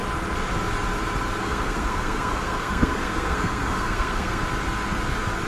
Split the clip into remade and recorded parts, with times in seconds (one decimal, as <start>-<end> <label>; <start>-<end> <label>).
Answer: 0.0-1.4 recorded; 1.4-4.4 remade; 4.4-5.5 recorded